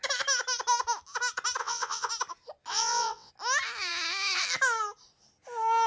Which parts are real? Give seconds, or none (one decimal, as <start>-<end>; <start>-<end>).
0.0-1.6; 2.1-2.7; 3.3-5.9